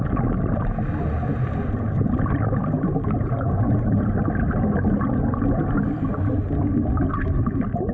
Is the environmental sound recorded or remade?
recorded